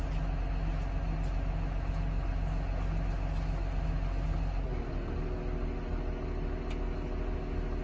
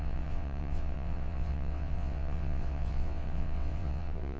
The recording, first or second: first